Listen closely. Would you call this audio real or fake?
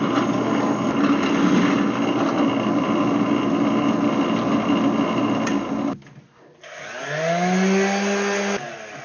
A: real